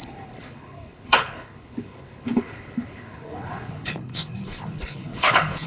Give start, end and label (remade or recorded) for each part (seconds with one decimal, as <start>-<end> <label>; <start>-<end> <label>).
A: 0.0-5.7 remade